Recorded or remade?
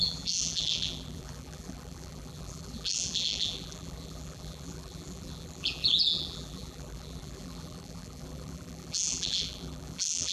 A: remade